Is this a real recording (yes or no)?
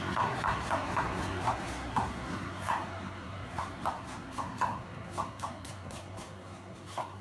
no